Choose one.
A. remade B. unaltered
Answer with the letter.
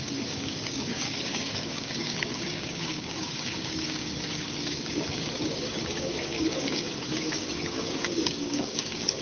A